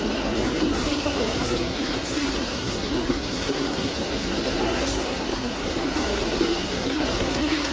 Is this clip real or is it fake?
fake